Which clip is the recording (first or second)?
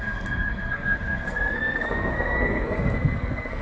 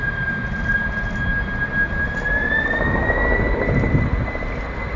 second